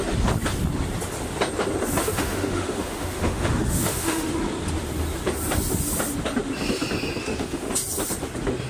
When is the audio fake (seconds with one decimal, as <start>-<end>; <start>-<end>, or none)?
2.0-4.3; 7.2-7.7